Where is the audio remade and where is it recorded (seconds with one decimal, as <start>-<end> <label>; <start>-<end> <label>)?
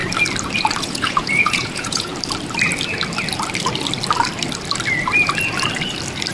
0.0-0.8 recorded; 0.8-2.1 remade; 2.1-6.3 recorded